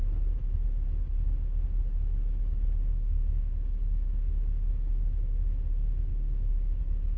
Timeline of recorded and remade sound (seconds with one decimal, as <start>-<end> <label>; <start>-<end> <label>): 0.0-2.9 recorded; 2.9-5.4 remade; 5.4-6.1 recorded; 6.1-6.8 remade; 6.8-7.2 recorded